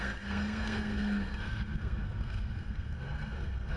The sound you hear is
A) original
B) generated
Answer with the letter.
B